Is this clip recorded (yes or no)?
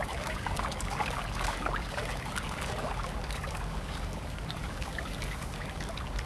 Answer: no